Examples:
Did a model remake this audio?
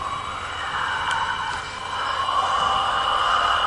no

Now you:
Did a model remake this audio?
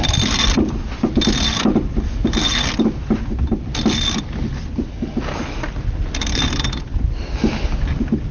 no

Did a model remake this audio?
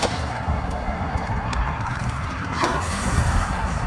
yes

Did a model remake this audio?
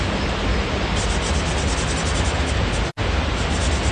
no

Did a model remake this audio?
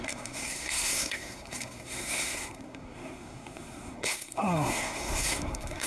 yes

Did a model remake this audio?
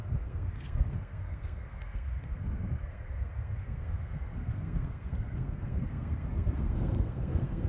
yes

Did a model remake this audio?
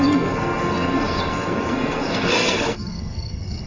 yes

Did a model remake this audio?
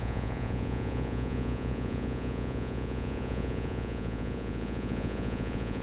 yes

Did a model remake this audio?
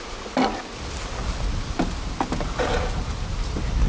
no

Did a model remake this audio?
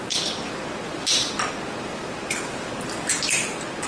no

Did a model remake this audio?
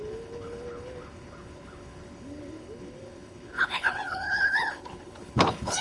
yes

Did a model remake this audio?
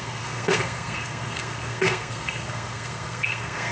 yes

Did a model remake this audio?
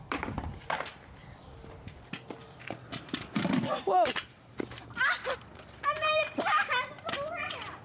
yes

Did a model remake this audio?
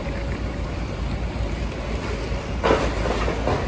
no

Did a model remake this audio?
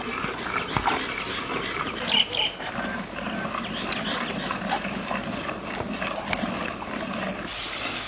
no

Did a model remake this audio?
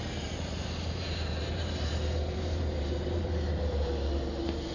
yes